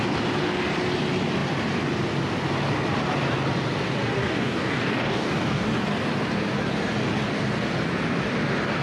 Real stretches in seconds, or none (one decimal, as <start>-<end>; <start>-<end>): 0.0-4.2; 5.7-8.8

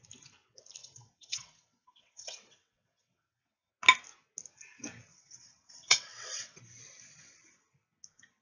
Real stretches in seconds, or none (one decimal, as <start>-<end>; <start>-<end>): 0.0-0.8; 3.7-5.1; 6.6-8.4

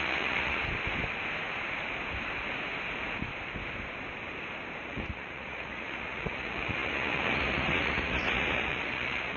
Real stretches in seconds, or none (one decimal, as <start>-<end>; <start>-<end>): 0.6-4.8

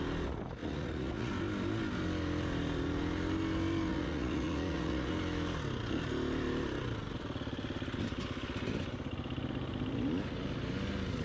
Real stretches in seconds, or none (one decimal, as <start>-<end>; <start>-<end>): 0.0-0.6; 1.3-3.9; 5.1-11.2

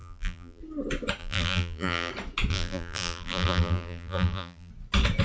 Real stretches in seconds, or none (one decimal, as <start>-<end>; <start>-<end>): 0.6-1.2; 2.1-2.5; 4.7-5.2

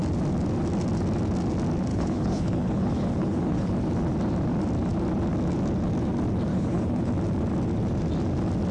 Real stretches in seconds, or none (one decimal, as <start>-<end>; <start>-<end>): 0.0-1.9; 3.7-6.5; 7.1-8.7

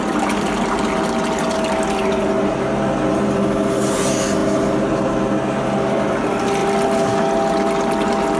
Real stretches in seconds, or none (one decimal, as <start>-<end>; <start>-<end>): 0.0-8.4